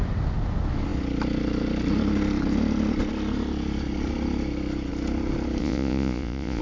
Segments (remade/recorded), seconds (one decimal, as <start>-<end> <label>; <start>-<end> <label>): 0.0-5.6 recorded; 5.6-6.6 remade